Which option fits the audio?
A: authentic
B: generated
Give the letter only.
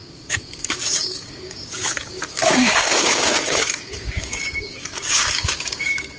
B